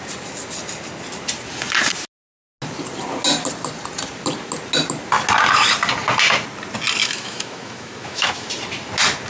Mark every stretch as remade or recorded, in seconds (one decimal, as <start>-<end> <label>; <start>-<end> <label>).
0.0-7.0 recorded; 7.0-8.5 remade; 8.5-9.3 recorded